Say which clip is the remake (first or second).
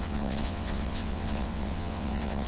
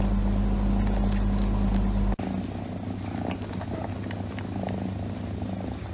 first